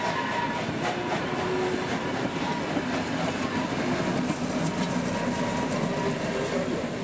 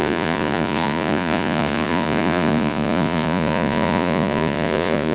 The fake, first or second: second